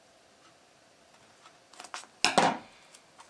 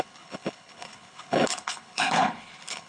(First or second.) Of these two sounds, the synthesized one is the second